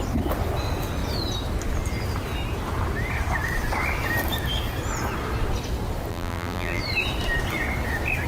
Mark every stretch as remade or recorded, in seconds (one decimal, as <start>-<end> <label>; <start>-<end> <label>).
0.0-6.1 recorded; 6.1-6.8 remade; 6.8-8.3 recorded

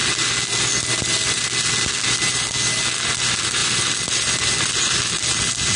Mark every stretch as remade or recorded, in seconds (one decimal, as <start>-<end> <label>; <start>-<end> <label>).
0.0-2.5 remade; 2.5-3.6 recorded; 3.6-5.3 remade; 5.3-5.8 recorded

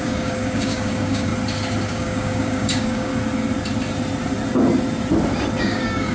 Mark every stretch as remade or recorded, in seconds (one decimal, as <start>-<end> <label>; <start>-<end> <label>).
0.0-1.3 remade; 1.3-1.9 recorded; 1.9-3.1 remade; 3.1-5.6 recorded; 5.6-6.1 remade